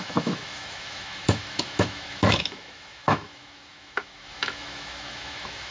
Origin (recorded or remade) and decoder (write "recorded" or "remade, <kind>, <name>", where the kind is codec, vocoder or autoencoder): remade, autoencoder, DAC-VAE